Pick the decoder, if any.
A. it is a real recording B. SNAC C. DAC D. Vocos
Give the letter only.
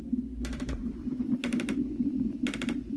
A